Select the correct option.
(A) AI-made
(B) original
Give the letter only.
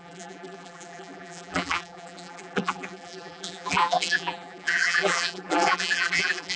A